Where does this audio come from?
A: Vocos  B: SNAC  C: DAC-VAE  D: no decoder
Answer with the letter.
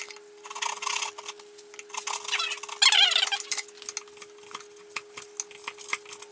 D